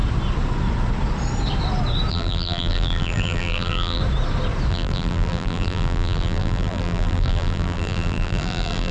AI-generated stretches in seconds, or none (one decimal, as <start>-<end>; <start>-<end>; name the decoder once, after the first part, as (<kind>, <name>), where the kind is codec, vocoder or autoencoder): 2.1-4.0 (vocoder, BigVGAN v2); 4.7-8.9